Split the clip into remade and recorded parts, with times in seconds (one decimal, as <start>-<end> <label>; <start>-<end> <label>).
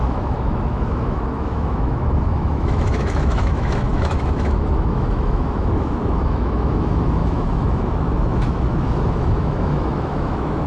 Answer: 0.0-10.7 remade